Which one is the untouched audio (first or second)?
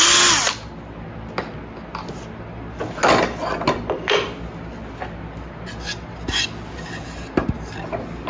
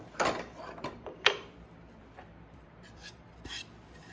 first